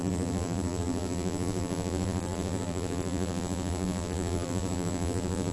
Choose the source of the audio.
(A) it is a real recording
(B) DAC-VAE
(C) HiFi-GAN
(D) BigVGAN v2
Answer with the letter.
D